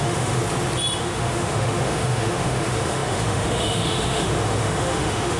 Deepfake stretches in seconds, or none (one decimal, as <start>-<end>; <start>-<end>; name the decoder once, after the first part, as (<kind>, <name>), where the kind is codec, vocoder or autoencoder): 0.0-0.4 (autoencoder, DAC-VAE); 1.0-5.4